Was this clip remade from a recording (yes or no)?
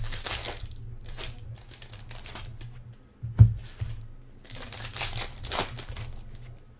no